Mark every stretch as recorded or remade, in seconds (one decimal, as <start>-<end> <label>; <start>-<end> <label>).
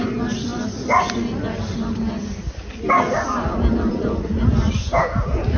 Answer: 0.0-5.6 recorded